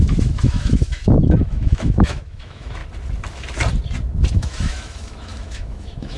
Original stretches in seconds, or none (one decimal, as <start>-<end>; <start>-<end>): 2.8-4.3